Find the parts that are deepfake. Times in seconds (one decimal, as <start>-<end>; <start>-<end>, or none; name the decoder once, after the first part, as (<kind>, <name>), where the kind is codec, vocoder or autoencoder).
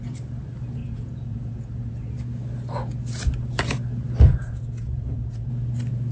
0.8-2.1 (vocoder, Vocos); 4.3-5.5